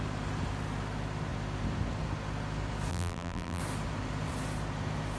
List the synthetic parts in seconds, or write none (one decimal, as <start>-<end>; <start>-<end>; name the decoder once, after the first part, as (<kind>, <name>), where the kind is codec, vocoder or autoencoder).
2.9-3.6 (vocoder, BigVGAN v2)